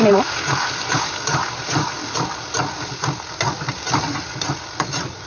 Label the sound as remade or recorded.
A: recorded